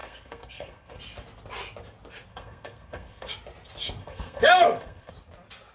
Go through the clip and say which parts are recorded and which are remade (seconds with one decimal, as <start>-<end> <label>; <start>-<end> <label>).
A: 0.0-1.0 remade; 1.0-2.3 recorded; 2.3-3.3 remade; 3.3-4.0 recorded; 4.0-5.1 remade; 5.1-5.7 recorded